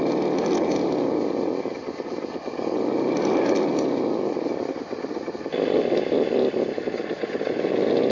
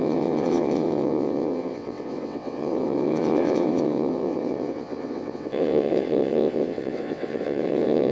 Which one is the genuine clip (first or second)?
first